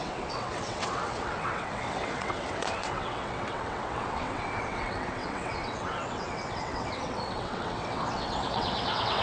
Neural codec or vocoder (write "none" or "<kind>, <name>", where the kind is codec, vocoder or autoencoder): vocoder, WaveNeXt